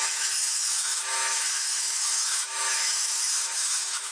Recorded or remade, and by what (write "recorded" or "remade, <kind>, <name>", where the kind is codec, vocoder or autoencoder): remade, autoencoder, DAC-VAE